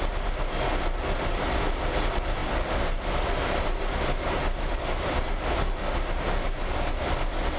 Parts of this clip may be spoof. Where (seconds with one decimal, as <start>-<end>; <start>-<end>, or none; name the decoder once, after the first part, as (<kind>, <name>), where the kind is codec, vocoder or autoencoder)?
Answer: none